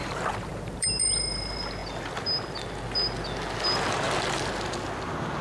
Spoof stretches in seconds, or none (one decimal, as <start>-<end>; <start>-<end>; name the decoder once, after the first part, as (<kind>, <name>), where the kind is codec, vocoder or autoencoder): 0.0-1.0 (vocoder, BigVGAN v2)